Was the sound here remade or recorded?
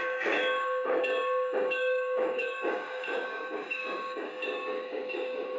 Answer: remade